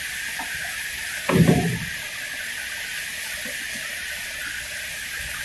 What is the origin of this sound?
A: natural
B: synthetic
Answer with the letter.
A